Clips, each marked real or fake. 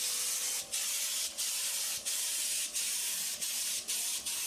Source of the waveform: real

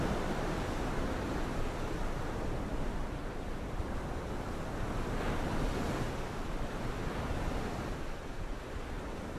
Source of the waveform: fake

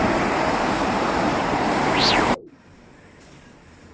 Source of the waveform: fake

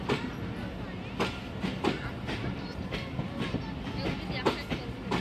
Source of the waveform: real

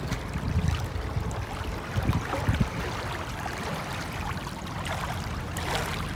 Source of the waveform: real